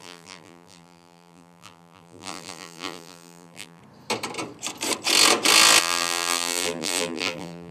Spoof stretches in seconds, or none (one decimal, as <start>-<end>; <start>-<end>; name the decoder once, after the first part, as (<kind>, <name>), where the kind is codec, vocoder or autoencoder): 0.0-3.8 (vocoder, BigVGAN v2); 5.8-7.7